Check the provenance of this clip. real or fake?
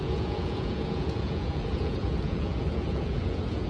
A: fake